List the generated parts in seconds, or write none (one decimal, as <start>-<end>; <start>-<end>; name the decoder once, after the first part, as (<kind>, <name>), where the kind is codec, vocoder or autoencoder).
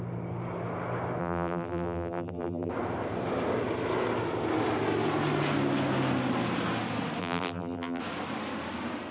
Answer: 1.2-2.7 (vocoder, BigVGAN v2); 7.2-8.0